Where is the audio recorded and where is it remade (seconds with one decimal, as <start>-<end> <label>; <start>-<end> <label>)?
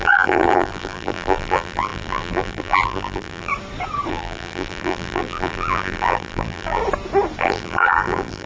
0.0-3.5 remade; 3.5-4.1 recorded; 4.1-6.8 remade; 6.8-7.4 recorded; 7.4-8.5 remade